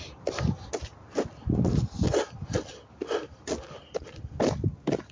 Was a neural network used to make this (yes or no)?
no